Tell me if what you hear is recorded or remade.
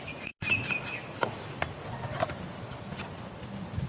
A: recorded